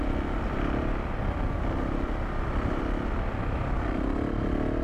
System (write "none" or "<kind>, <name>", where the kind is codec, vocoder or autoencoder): none